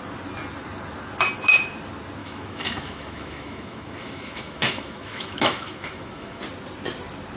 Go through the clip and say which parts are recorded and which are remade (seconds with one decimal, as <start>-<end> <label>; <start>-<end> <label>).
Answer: 0.0-2.2 recorded; 2.2-6.4 remade; 6.4-7.4 recorded